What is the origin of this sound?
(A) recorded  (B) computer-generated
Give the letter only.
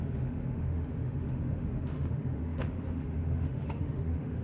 B